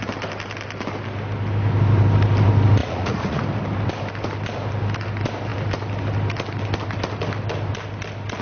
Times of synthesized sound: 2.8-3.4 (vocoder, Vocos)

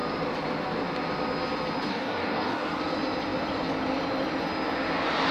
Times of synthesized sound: 1.9-2.8 (codec, DAC)

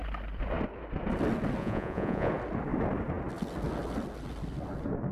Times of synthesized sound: 1.6-2.3 (vocoder, Vocos)

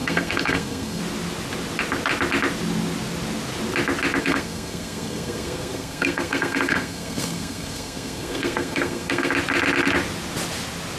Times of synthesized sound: 0.0-1.0 (codec, SNAC); 4.2-9.3

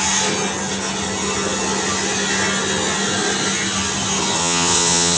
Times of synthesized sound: 4.4-5.2 (vocoder, Vocos)

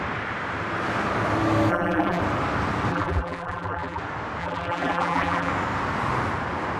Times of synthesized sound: 1.7-2.2 (vocoder, BigVGAN v2); 2.9-4.0; 4.4-5.5

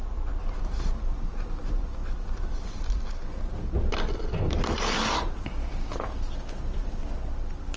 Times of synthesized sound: none